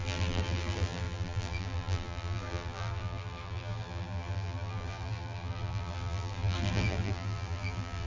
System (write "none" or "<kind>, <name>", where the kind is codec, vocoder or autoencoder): vocoder, BigVGAN v2